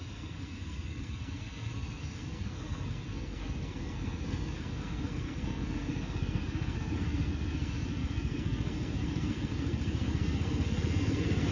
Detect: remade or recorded remade